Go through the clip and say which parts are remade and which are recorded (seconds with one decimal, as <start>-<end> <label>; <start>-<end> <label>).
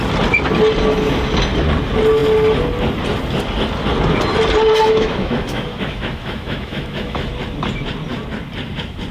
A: 0.0-4.8 recorded; 4.8-7.3 remade; 7.3-9.1 recorded